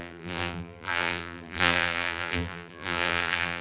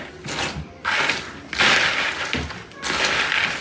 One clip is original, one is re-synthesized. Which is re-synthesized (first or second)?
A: first